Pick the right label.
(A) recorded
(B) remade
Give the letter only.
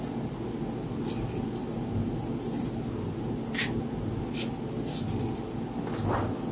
A